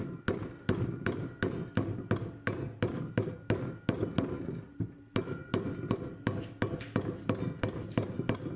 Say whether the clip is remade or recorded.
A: recorded